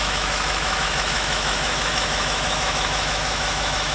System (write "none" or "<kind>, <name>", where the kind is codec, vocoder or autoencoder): autoencoder, DAC-VAE